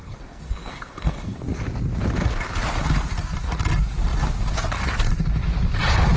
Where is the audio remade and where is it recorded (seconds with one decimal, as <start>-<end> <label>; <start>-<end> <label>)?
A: 0.0-1.4 remade; 1.4-6.2 recorded